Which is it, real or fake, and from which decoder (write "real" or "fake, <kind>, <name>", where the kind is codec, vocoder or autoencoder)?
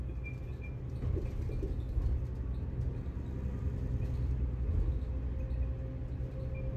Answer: real